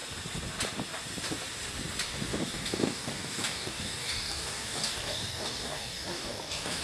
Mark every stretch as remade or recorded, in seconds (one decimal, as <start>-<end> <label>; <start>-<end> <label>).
0.0-2.3 recorded; 2.3-6.8 remade